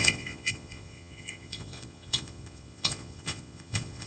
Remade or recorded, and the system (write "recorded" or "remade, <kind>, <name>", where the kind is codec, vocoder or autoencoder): remade, vocoder, Vocos